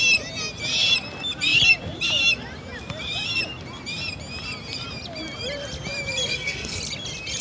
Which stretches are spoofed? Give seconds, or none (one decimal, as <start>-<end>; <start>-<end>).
6.3-6.8